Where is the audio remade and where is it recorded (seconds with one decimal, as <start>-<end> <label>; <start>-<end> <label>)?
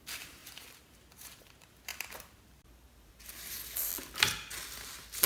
0.0-3.9 remade; 3.9-5.3 recorded